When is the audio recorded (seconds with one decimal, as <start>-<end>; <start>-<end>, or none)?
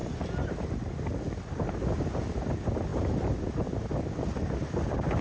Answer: 0.0-5.2